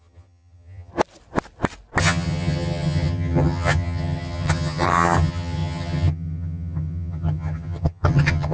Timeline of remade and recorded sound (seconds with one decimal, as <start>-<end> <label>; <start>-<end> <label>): 0.0-0.9 remade; 0.9-2.0 recorded; 2.0-8.5 remade